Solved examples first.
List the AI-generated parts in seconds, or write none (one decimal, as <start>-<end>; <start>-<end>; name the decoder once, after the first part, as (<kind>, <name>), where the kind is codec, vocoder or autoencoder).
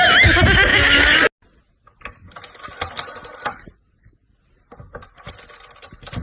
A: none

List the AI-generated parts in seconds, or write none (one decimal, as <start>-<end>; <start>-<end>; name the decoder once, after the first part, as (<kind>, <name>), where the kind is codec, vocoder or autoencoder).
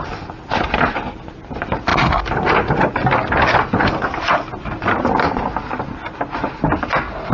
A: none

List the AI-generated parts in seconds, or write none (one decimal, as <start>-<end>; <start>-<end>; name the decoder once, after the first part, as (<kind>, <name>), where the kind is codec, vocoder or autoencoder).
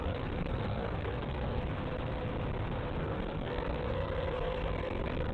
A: 0.0-1.6 (codec, SNAC); 3.0-5.3